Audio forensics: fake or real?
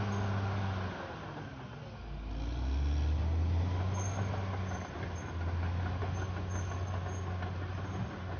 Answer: real